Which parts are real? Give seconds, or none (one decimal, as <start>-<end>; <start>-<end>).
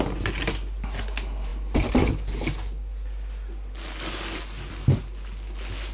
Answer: 0.0-5.9